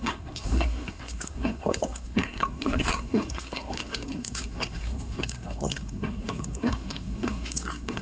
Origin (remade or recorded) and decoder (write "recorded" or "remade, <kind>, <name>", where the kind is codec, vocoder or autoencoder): remade, codec, SNAC